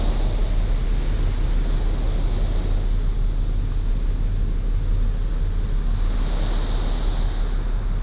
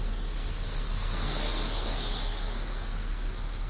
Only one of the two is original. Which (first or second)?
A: first